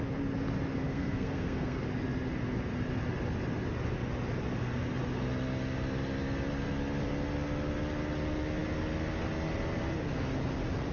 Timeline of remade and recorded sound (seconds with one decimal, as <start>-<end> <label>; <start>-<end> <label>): 0.0-0.9 recorded; 0.9-1.8 remade; 1.8-10.9 recorded